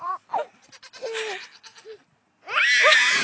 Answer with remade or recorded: recorded